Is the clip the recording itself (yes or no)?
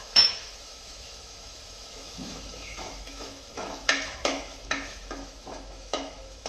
no